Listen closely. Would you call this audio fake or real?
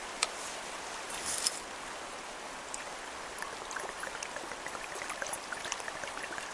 real